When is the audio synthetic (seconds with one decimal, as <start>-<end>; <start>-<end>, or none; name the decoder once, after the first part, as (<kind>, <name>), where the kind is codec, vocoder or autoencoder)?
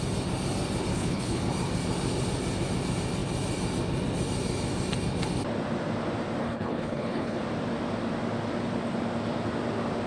0.9-1.4 (codec, HILCodec); 6.4-7.4